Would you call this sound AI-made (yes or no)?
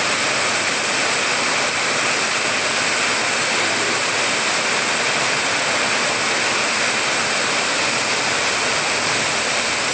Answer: no